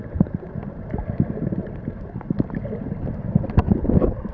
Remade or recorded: recorded